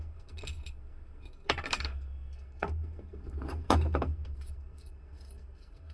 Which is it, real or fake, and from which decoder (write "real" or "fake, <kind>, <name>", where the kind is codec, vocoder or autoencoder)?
fake, codec, SNAC